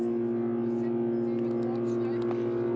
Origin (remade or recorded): recorded